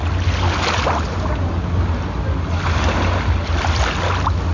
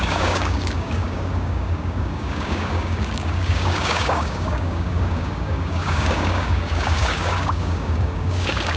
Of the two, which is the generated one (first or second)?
second